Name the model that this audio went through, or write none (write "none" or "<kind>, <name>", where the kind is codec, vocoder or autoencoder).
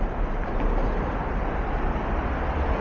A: none